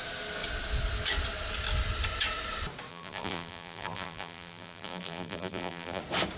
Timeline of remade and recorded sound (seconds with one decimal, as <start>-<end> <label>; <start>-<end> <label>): 0.0-2.9 recorded; 2.9-6.0 remade; 6.0-6.4 recorded